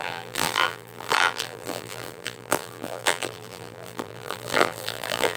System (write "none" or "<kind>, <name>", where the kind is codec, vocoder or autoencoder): vocoder, BigVGAN v2